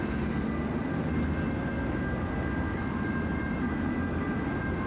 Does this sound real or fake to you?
real